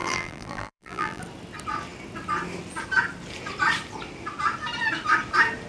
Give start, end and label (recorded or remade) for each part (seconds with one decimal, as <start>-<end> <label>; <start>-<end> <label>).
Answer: 0.0-1.2 remade; 1.2-5.7 recorded